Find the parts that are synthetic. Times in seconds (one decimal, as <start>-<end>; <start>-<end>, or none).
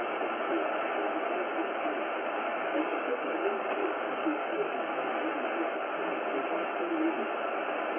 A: 2.5-4.9